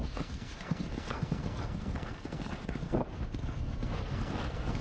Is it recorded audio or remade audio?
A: remade